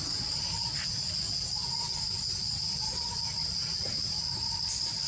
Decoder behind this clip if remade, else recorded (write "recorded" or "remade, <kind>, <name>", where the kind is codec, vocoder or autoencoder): recorded